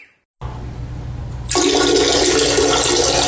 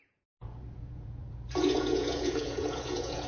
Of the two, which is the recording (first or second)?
first